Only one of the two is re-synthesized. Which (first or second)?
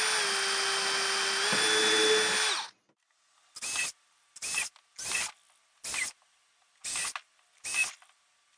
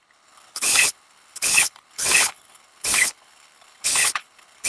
second